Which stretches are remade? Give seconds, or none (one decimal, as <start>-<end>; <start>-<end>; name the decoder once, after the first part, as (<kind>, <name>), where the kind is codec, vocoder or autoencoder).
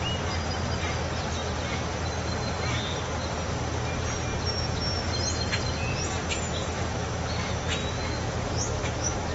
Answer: 7.8-9.3 (autoencoder, DAC-VAE)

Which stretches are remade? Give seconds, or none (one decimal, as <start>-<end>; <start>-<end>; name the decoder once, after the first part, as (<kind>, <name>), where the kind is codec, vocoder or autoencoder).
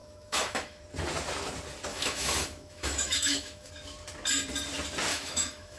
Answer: 0.0-0.8 (autoencoder, DAC-VAE); 1.9-3.7; 5.1-5.8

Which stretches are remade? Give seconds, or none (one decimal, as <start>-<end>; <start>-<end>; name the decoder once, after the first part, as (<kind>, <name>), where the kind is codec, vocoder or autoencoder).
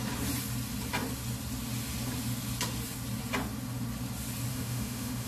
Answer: 4.5-5.3 (autoencoder, DAC-VAE)